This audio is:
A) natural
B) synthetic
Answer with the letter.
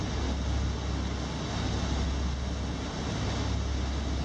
A